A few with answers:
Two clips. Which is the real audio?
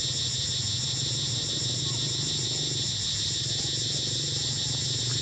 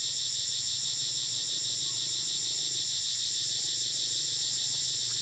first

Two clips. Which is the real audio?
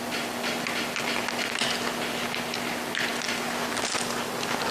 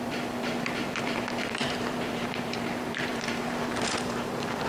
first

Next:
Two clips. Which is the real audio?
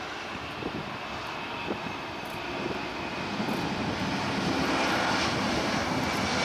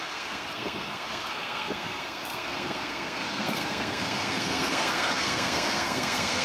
first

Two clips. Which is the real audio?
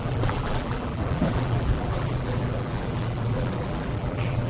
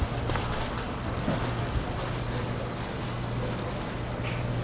second